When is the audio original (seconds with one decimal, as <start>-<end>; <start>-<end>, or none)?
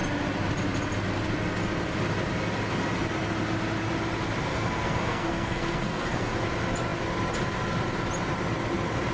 0.0-4.5; 6.3-9.1